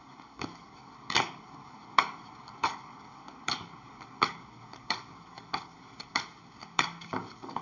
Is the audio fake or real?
fake